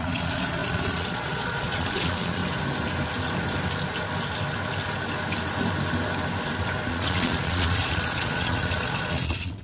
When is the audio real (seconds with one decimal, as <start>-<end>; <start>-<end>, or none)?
2.4-6.9